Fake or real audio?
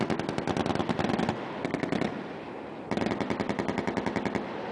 real